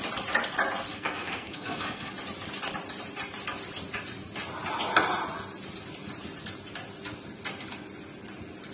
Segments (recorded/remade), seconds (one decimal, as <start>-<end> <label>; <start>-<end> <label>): 0.0-0.9 recorded; 0.9-2.1 remade; 2.1-8.7 recorded